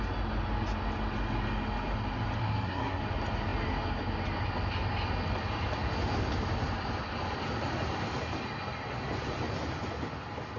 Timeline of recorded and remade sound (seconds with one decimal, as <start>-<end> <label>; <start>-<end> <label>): 0.0-2.4 recorded; 2.4-3.0 remade; 3.0-10.6 recorded